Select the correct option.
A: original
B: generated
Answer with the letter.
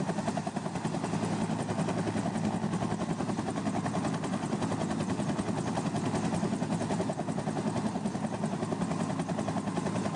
A